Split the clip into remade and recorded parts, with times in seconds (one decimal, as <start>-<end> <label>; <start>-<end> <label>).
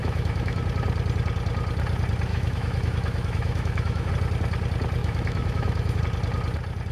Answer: 0.0-0.6 remade; 0.6-2.3 recorded; 2.3-4.1 remade; 4.1-5.0 recorded; 5.0-6.0 remade; 6.0-6.9 recorded